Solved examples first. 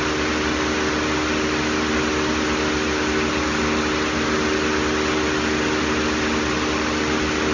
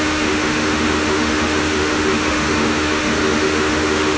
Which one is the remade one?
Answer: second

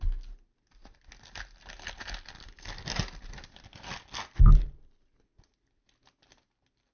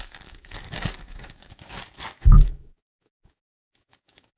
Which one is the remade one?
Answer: second